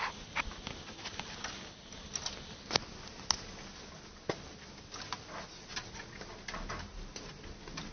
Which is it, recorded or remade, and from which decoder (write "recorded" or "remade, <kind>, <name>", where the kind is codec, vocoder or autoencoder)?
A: recorded